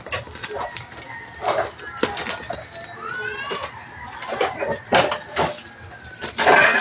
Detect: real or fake real